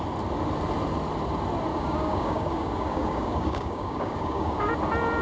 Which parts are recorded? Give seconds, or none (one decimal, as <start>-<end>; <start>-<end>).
0.0-1.7; 4.7-5.2